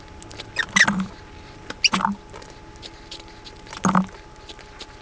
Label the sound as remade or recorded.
recorded